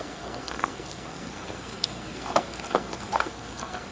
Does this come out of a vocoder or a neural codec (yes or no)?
yes